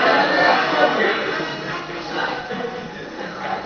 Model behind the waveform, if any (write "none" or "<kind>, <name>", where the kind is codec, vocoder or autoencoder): codec, SNAC